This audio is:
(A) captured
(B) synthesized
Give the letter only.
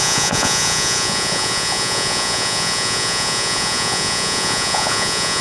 B